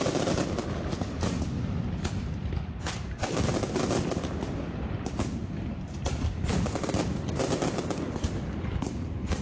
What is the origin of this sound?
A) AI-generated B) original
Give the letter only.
B